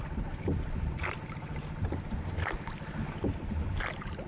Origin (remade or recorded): recorded